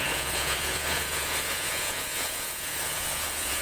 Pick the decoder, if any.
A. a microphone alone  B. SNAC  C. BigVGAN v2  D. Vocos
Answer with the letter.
D